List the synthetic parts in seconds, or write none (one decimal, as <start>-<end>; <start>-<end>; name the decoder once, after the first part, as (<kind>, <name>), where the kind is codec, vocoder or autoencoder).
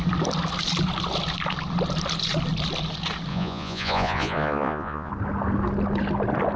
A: 3.3-5.1 (vocoder, Vocos)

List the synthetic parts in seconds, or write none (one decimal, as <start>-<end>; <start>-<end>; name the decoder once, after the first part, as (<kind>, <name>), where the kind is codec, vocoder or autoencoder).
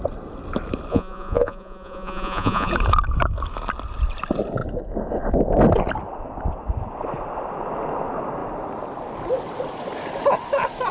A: 0.9-2.7 (vocoder, Vocos)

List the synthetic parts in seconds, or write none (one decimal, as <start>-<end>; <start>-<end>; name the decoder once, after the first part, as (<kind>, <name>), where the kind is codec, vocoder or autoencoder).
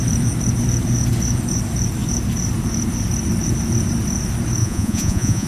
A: 4.6-5.5 (vocoder, Vocos)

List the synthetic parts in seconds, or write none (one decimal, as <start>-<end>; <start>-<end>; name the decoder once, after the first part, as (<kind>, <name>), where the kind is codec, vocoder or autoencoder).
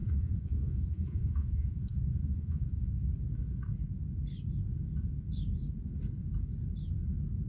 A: 0.0-2.9 (vocoder, Vocos)